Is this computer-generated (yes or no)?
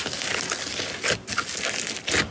no